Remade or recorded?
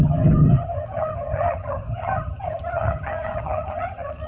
remade